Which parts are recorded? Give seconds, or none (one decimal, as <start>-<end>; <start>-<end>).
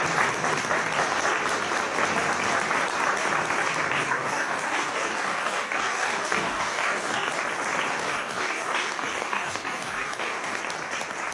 0.0-4.0; 7.3-7.9; 10.6-11.3